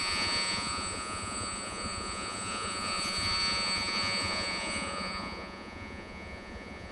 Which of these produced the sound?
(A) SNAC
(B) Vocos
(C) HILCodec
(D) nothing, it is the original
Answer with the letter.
B